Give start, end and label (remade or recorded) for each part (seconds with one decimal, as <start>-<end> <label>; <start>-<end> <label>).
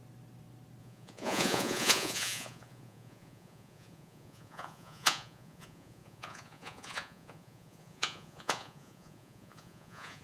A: 0.0-0.8 recorded; 0.8-10.2 remade